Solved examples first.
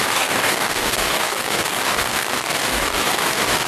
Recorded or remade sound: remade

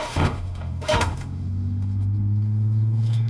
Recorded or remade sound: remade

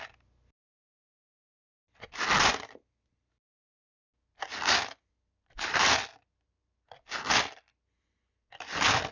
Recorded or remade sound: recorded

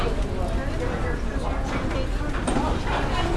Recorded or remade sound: recorded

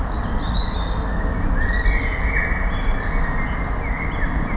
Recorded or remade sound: recorded